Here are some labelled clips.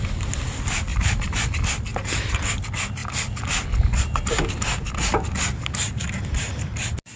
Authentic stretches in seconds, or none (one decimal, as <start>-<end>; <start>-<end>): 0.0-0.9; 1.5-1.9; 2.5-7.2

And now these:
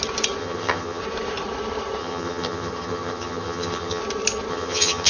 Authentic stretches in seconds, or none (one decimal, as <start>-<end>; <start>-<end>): 0.0-0.4; 1.0-2.0; 4.0-4.5

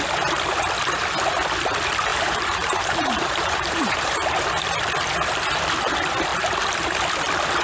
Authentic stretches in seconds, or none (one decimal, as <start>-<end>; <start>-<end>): 0.0-2.1; 4.5-7.6

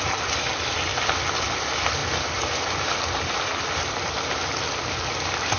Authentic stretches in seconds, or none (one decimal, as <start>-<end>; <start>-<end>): 0.9-1.4